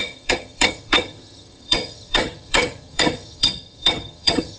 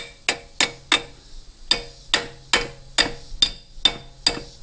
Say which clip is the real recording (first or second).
second